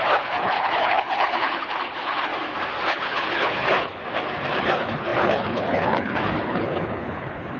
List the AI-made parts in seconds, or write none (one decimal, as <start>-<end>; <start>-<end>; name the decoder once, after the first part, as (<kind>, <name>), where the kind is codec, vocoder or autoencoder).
0.0-2.3 (codec, HILCodec); 2.9-4.0; 4.6-7.6